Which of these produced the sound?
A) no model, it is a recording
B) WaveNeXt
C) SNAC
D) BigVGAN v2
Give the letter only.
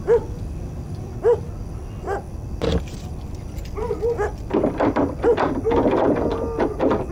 A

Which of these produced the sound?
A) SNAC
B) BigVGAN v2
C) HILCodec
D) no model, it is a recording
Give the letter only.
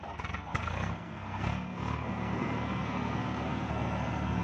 A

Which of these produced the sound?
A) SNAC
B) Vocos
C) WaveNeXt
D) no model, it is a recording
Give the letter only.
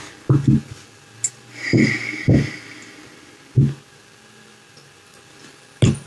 D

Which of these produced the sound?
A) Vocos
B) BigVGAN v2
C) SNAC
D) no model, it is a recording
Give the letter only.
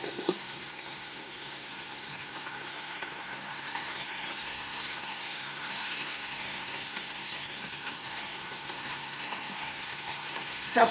C